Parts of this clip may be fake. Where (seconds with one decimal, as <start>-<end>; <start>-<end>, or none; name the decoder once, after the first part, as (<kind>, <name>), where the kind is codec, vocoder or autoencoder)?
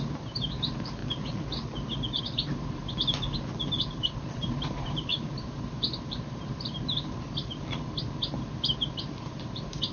0.0-1.0 (vocoder, BigVGAN v2); 2.2-2.8; 4.2-9.9